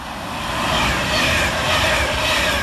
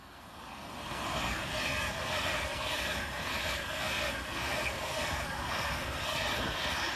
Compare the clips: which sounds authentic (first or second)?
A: first